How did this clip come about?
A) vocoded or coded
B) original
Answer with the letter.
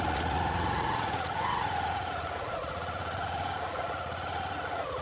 A